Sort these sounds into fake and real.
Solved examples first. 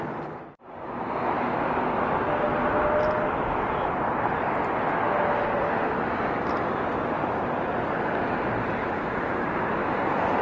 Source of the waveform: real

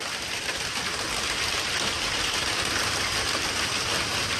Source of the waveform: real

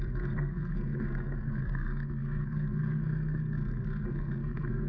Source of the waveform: fake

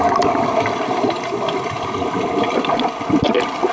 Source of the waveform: real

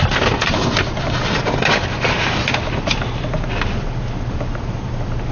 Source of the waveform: real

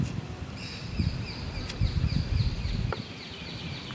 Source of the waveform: real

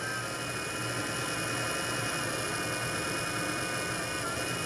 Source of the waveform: real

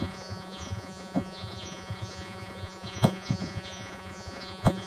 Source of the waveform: fake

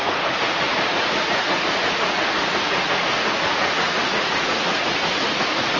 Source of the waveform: fake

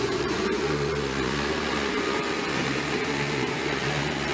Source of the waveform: fake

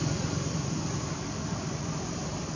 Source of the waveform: real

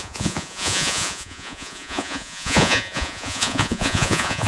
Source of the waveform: fake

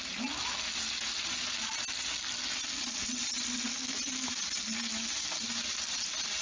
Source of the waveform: real